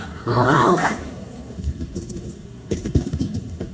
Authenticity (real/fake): fake